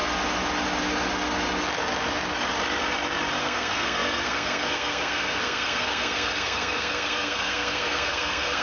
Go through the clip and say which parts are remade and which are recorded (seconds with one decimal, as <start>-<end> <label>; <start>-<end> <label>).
0.0-3.4 recorded; 3.4-8.6 remade